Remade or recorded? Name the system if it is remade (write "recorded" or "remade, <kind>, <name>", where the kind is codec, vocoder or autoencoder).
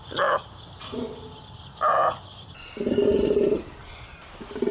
recorded